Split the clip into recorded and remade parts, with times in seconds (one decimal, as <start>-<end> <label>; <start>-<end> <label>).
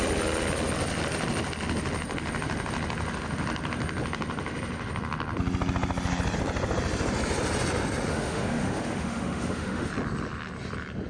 0.0-8.1 recorded; 8.1-9.9 remade; 9.9-11.1 recorded